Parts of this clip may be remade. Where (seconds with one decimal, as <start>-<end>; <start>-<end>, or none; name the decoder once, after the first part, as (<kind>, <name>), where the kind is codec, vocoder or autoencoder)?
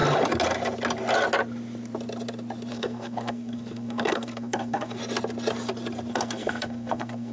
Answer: 2.7-5.0 (codec, SNAC); 6.1-7.3